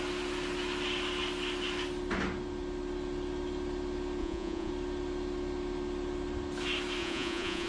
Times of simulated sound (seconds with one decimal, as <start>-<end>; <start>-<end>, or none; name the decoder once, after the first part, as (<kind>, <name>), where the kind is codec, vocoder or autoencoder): 4.2-4.7 (vocoder, Vocos); 7.0-7.7